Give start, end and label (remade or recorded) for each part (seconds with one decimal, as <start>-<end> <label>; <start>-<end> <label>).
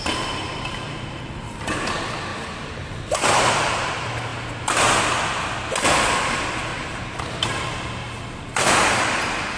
0.0-2.3 recorded; 2.3-3.9 remade; 3.9-6.7 recorded; 6.7-7.6 remade; 7.6-9.6 recorded